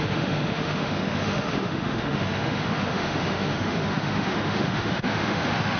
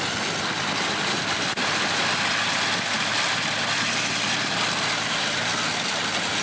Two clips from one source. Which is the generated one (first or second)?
first